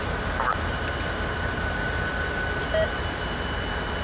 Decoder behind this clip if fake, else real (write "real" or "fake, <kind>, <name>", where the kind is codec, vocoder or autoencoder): real